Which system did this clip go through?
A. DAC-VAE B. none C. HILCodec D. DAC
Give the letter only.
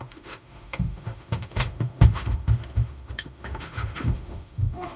A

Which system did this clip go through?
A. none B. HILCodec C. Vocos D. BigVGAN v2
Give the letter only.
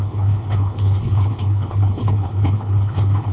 B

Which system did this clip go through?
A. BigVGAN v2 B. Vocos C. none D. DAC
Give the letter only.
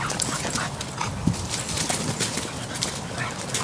C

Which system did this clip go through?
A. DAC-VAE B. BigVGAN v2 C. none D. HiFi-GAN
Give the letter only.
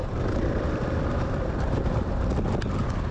B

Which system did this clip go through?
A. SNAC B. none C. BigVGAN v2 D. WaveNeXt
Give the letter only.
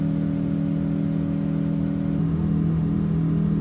B